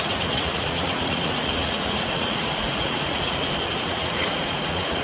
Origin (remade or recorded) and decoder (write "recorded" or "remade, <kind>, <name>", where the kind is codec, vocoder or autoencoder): remade, vocoder, Vocos